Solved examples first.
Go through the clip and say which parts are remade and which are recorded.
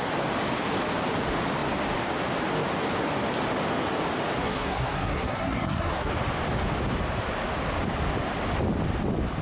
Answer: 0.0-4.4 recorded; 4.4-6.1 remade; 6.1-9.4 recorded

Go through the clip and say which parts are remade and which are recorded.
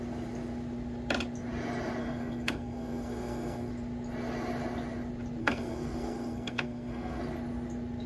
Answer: 0.0-2.0 recorded; 2.0-3.7 remade; 3.7-5.4 recorded; 5.4-7.2 remade; 7.2-8.1 recorded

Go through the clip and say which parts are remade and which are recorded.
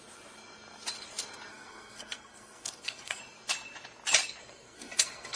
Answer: 0.0-1.5 recorded; 1.5-3.2 remade; 3.2-4.4 recorded; 4.4-5.4 remade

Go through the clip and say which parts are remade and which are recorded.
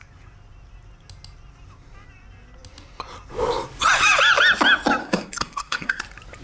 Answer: 0.0-5.0 recorded; 5.0-6.0 remade; 6.0-6.4 recorded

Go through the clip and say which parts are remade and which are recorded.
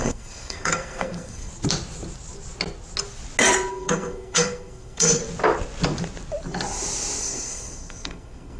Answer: 0.0-1.5 remade; 1.5-3.7 recorded; 3.7-5.2 remade; 5.2-7.2 recorded; 7.2-8.6 remade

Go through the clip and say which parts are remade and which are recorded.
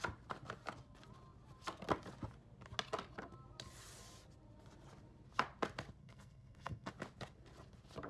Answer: 0.0-6.0 recorded; 6.0-6.9 remade; 6.9-8.1 recorded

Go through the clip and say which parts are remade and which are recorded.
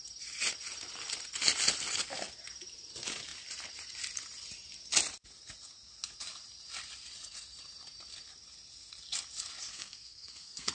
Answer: 0.0-9.7 recorded; 9.7-10.7 remade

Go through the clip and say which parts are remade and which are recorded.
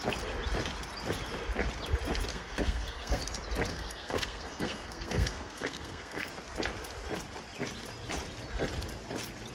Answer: 0.0-2.3 recorded; 2.3-3.2 remade; 3.2-3.7 recorded; 3.7-6.3 remade; 6.3-9.5 recorded